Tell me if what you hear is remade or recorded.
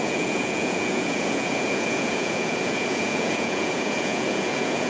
remade